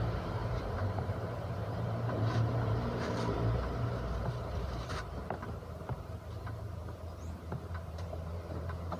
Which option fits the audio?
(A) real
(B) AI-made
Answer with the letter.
B